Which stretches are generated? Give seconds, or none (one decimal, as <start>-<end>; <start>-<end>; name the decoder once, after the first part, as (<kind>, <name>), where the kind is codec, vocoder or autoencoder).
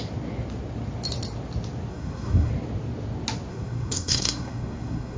1.9-2.5 (codec, SNAC); 3.5-5.2